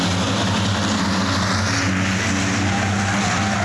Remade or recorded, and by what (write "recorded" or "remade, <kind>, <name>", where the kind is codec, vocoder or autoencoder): recorded